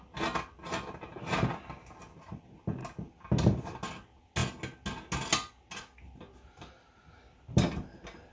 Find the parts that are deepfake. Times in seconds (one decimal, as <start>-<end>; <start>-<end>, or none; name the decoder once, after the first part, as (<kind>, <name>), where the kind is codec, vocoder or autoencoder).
none